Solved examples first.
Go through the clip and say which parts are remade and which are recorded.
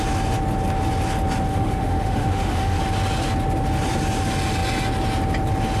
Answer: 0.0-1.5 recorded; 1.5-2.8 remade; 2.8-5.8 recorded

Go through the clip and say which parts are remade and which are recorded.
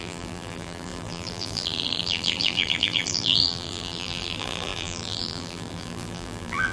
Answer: 0.0-6.7 remade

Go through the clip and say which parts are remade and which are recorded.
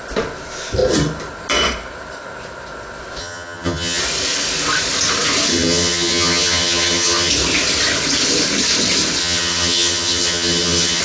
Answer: 0.0-3.2 recorded; 3.2-4.0 remade; 4.0-5.5 recorded; 5.5-7.3 remade; 7.3-9.2 recorded; 9.2-11.0 remade